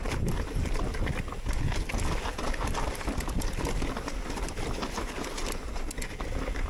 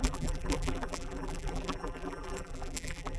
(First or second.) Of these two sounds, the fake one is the second